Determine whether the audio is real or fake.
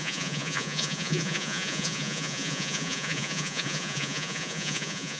fake